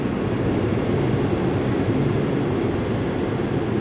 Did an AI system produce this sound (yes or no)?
no